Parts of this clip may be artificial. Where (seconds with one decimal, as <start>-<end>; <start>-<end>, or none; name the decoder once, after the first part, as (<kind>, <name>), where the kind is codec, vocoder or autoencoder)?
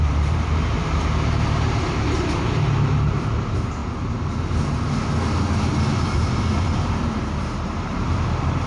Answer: 0.0-3.8 (vocoder, BigVGAN v2); 5.5-8.7